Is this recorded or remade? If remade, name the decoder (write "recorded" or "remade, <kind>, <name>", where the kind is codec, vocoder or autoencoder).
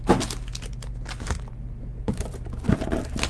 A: recorded